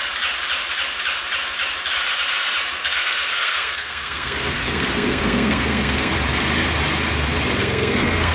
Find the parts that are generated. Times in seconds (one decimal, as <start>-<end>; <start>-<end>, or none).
2.8-6.1; 7.6-8.3